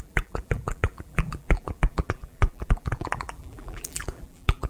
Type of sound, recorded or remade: remade